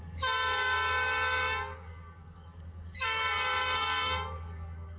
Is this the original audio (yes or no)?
no